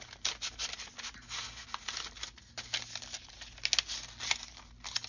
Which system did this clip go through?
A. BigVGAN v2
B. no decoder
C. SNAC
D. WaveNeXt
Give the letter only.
B